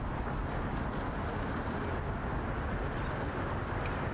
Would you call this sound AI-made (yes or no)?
no